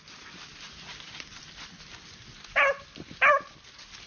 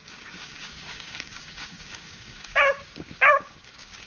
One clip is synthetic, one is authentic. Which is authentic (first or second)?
first